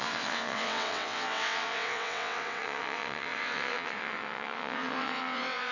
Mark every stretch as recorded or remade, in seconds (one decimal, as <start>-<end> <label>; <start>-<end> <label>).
0.0-5.7 remade